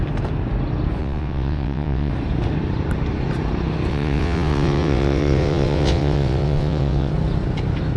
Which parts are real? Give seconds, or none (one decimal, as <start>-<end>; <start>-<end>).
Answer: 0.0-1.0; 2.1-3.9; 7.1-8.0